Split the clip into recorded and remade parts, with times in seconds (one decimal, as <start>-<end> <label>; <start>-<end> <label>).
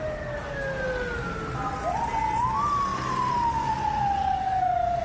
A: 0.0-5.0 recorded